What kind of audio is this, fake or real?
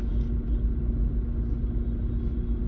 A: real